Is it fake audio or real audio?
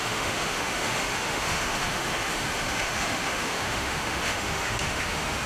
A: fake